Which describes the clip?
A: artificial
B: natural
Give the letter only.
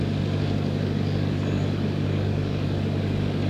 A